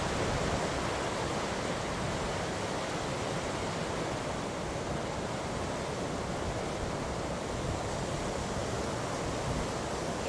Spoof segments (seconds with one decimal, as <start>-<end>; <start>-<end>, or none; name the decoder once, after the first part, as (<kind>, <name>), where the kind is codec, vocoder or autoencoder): none